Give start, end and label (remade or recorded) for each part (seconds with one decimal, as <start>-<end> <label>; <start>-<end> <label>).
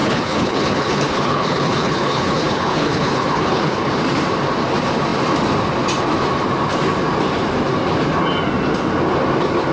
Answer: 0.0-3.9 remade; 3.9-9.7 recorded